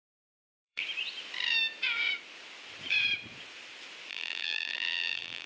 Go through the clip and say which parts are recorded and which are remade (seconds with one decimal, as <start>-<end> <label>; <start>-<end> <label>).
0.0-0.8 remade; 0.8-4.1 recorded; 4.1-5.5 remade